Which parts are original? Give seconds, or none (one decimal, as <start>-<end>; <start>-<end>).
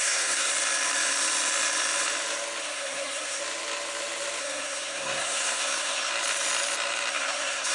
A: 0.5-2.6; 3.4-4.4; 6.1-7.1